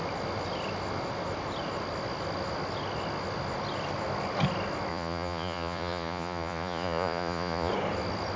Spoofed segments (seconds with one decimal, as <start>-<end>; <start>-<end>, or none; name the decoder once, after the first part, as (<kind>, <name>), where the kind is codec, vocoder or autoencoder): 4.9-7.7 (vocoder, Vocos)